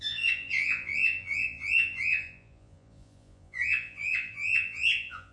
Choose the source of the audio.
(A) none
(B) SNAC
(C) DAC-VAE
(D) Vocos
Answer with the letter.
D